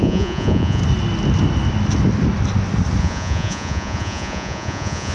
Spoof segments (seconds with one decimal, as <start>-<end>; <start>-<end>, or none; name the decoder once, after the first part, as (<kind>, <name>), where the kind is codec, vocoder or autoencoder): 0.0-0.8 (vocoder, Vocos); 3.0-5.1